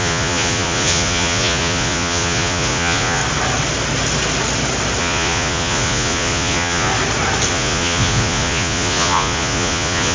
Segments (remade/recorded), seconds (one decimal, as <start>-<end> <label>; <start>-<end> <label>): 0.0-3.2 remade; 3.2-5.0 recorded; 5.0-6.9 remade; 6.9-7.5 recorded; 7.5-10.1 remade